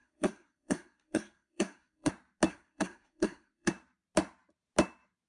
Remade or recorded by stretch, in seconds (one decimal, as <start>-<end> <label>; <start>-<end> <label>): 0.0-2.1 remade; 2.1-2.5 recorded; 2.5-3.7 remade; 3.7-5.3 recorded